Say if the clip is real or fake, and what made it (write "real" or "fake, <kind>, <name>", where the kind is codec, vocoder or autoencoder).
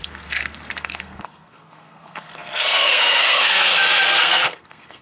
fake, codec, SNAC